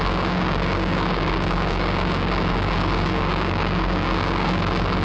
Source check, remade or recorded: remade